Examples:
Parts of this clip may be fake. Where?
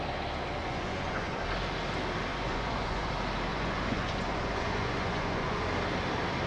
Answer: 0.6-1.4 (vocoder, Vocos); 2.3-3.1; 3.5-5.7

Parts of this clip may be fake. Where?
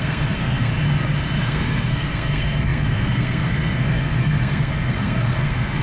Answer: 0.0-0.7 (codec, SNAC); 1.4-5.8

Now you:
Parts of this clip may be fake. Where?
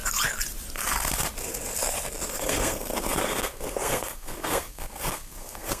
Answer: 2.3-5.8 (codec, SNAC)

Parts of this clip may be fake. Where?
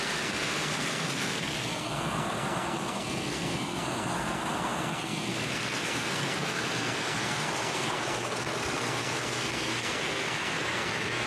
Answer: 0.0-11.3 (codec, SNAC)